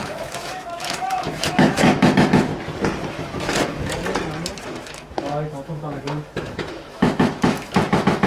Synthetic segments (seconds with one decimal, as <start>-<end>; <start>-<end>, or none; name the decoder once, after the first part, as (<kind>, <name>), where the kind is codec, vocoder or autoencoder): 0.0-2.5 (autoencoder, DAC-VAE); 3.1-4.0; 4.6-8.3

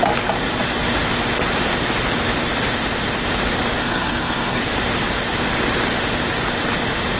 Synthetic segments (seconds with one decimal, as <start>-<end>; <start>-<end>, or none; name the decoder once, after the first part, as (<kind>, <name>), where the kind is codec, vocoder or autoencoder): 3.8-4.6 (codec, SNAC)

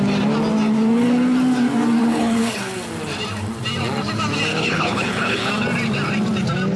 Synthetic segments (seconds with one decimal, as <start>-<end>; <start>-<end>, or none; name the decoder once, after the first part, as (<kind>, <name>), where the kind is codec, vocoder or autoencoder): 2.0-2.6 (codec, HILCodec); 4.5-5.5

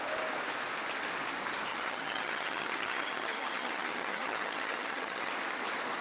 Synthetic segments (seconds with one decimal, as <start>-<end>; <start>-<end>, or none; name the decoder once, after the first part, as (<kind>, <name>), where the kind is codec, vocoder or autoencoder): 1.7-5.3 (vocoder, HiFi-GAN)